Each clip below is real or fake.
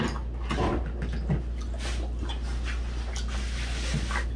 real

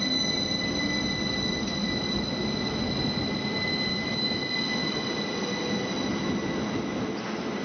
real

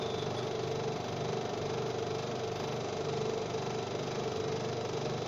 real